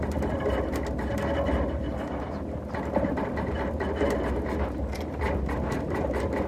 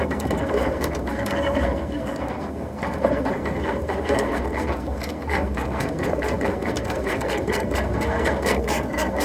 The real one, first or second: first